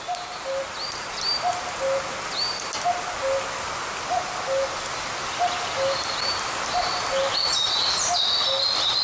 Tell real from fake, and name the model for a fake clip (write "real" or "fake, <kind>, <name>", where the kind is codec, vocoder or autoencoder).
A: real